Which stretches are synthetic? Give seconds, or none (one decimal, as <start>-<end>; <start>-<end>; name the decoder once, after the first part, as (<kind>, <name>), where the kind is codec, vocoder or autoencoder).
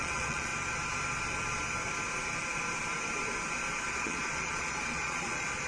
0.0-0.5 (vocoder, Vocos); 3.9-5.7